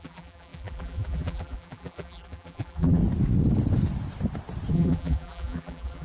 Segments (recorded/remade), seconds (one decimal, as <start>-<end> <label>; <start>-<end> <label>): 0.0-3.0 remade; 3.0-4.7 recorded; 4.7-6.0 remade